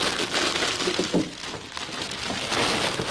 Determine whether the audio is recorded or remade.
recorded